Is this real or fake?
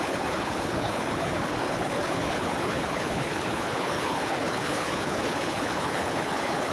fake